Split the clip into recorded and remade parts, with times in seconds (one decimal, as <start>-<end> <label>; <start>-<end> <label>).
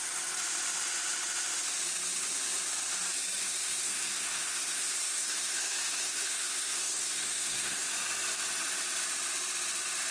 0.0-3.4 recorded; 3.4-7.9 remade; 7.9-10.1 recorded